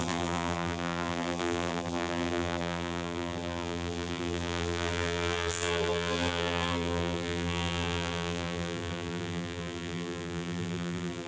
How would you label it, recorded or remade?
remade